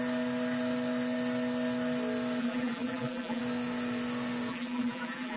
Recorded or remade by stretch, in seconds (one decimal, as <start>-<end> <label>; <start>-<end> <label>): 0.0-2.4 recorded; 2.4-3.4 remade; 3.4-4.5 recorded; 4.5-5.4 remade